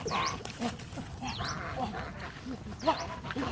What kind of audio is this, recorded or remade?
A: recorded